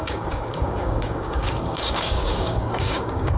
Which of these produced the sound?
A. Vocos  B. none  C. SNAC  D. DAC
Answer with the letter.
D